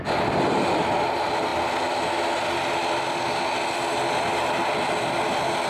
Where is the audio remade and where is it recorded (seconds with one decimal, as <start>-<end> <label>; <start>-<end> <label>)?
0.0-5.7 recorded